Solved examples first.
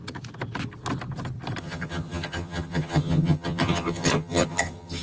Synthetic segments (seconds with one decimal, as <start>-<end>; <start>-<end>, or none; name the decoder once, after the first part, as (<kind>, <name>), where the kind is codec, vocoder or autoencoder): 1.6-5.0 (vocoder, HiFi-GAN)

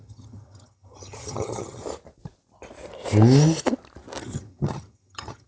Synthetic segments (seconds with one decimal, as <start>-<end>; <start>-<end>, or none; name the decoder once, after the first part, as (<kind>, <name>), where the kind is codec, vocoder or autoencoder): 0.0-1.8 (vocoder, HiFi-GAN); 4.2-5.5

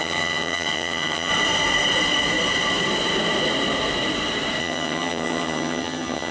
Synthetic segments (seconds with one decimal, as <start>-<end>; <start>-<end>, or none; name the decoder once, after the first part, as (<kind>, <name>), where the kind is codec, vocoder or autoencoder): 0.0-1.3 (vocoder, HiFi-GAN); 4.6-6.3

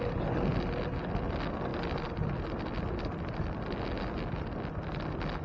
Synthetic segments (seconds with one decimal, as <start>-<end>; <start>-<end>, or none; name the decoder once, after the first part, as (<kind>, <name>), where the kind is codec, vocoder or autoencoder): none

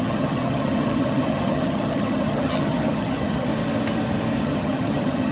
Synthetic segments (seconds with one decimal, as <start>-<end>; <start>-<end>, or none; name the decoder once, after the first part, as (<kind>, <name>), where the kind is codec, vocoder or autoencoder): 0.0-3.5 (vocoder, HiFi-GAN); 4.4-5.3